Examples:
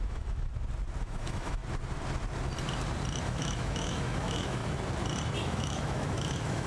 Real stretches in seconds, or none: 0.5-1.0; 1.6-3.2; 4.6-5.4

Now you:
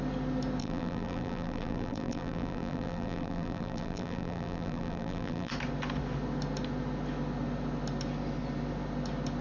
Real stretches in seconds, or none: 0.0-0.6; 5.5-9.4

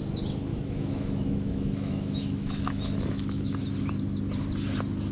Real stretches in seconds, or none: 0.0-0.5; 3.6-5.1

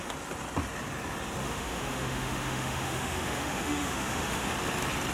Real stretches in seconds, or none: 0.0-1.4; 4.5-5.1

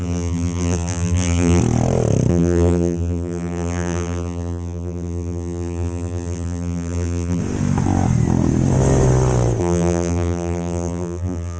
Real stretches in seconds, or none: 1.6-2.3; 7.4-9.6

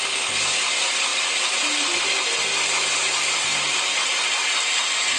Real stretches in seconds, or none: 0.0-1.1; 2.0-5.2

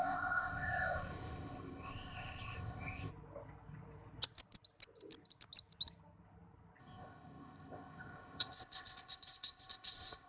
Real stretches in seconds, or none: 3.1-6.8

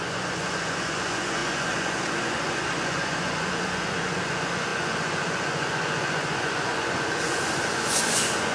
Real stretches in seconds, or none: none